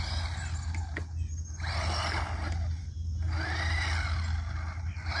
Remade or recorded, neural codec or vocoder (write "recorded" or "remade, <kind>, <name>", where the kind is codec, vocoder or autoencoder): recorded